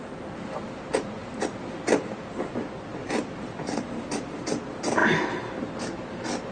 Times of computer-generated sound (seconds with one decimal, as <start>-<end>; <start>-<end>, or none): 1.2-2.5; 2.9-4.6